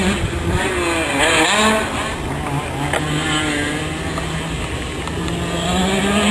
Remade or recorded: recorded